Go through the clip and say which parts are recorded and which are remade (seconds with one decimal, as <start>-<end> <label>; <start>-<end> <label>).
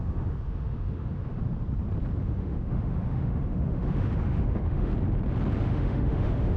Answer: 0.0-1.4 remade; 1.4-2.2 recorded; 2.2-4.9 remade; 4.9-5.6 recorded; 5.6-6.6 remade